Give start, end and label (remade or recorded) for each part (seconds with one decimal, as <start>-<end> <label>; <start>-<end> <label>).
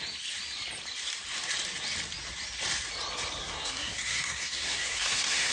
0.0-3.4 recorded; 3.4-5.5 remade